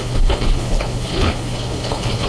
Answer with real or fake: fake